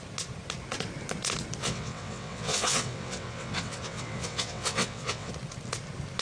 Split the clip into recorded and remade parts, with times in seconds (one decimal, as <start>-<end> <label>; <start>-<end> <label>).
0.0-1.6 recorded; 1.6-5.3 remade; 5.3-6.2 recorded